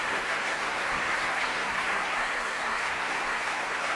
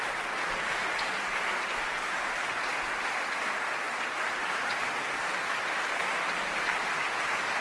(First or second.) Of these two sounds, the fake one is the first